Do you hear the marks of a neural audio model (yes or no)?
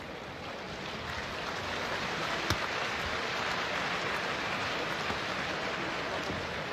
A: no